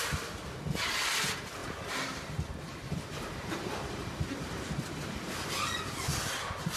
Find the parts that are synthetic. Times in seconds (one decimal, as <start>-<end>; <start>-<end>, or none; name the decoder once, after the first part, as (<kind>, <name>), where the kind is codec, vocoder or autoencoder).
1.6-5.3 (vocoder, BigVGAN v2)